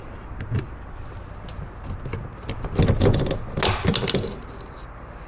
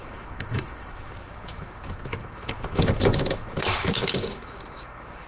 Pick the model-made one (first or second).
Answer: second